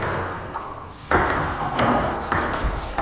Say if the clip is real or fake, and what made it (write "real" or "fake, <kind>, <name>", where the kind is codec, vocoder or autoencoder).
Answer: fake, codec, SNAC